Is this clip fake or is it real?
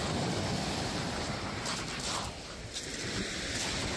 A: real